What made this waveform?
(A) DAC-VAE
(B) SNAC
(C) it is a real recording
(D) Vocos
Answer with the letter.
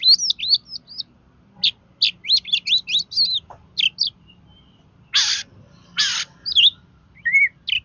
C